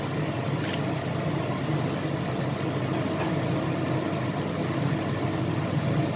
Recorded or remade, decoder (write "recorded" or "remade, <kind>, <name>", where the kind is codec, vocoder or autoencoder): recorded